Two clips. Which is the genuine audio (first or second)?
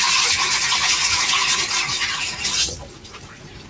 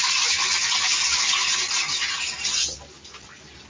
second